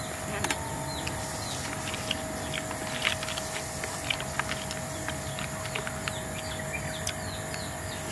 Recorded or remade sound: recorded